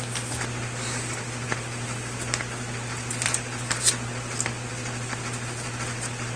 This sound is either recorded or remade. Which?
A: recorded